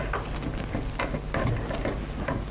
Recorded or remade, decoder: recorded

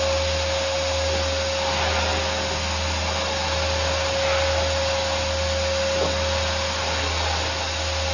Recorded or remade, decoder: recorded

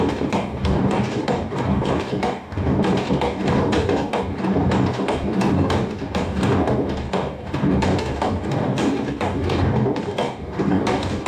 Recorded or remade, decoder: remade, codec, DAC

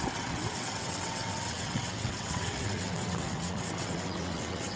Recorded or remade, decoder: remade, vocoder, WaveNeXt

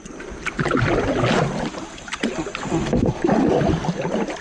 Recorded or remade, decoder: recorded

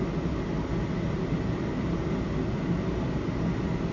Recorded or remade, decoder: recorded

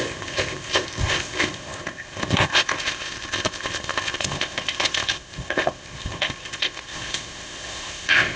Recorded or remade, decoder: remade, codec, ZipCodec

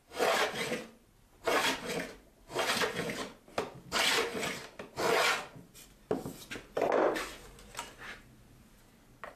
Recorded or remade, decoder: recorded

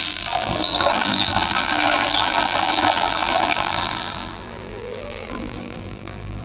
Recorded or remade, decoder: remade, vocoder, BigVGAN v2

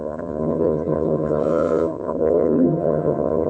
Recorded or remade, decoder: remade, vocoder, HiFi-GAN